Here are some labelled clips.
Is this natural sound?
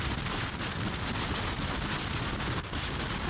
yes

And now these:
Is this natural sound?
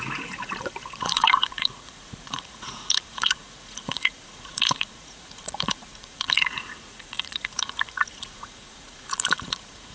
no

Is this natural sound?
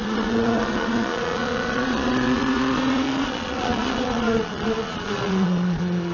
no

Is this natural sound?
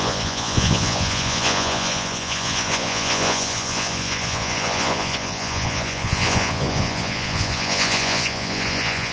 no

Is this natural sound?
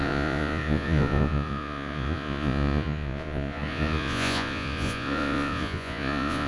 no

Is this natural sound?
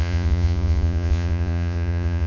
no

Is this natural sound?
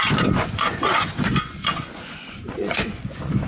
no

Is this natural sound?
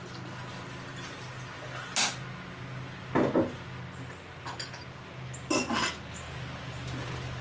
yes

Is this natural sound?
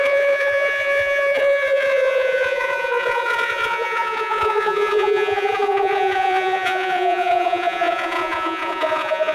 no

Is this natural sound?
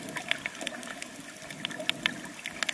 yes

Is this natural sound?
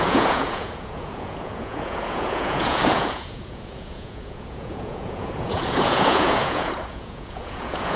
no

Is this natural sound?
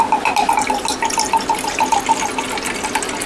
yes